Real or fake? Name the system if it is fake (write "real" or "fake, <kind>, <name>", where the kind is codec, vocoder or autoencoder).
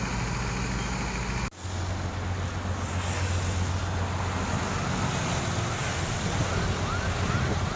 real